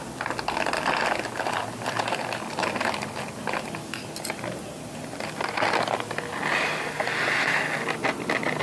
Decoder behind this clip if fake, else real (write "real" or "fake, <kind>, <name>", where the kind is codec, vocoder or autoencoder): real